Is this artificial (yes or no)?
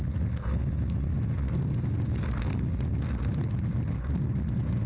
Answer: no